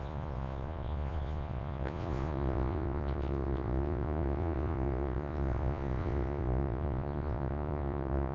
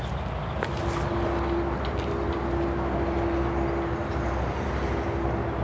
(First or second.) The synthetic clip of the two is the first